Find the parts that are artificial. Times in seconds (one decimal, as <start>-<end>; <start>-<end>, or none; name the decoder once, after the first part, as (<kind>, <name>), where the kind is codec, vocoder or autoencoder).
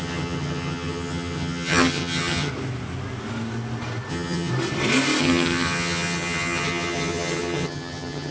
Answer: 0.0-2.5 (vocoder, HiFi-GAN); 4.1-4.5; 5.2-8.3